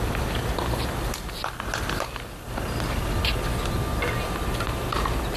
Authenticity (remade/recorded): recorded